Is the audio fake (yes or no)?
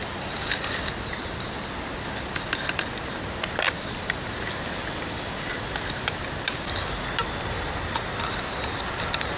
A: no